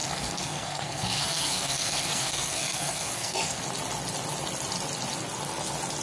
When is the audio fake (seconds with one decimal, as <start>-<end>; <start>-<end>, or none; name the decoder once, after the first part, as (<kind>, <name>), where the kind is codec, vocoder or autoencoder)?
0.0-3.6 (codec, SNAC)